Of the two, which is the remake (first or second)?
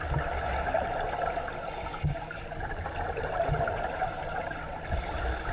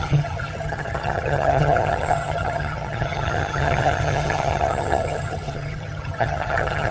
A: second